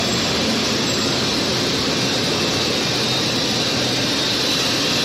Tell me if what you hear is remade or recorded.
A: recorded